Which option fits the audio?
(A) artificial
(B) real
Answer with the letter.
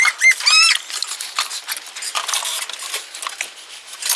B